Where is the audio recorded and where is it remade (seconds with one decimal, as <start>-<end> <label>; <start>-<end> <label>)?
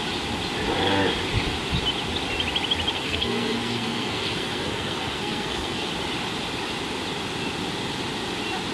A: 0.0-2.9 recorded; 2.9-5.9 remade; 5.9-8.7 recorded